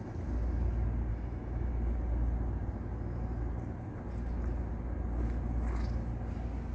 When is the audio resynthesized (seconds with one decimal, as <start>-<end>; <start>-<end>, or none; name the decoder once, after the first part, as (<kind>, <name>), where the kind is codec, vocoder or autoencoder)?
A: 1.1-1.7 (autoencoder, DAC-VAE)